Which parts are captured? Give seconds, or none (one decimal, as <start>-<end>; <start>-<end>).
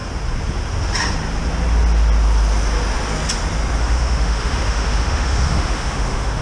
0.0-3.8